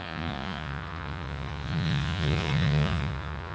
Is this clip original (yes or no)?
no